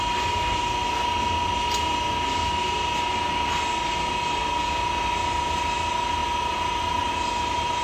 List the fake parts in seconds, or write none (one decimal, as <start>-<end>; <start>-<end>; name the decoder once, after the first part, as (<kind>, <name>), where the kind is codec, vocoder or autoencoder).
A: 6.2-7.8 (vocoder, BigVGAN v2)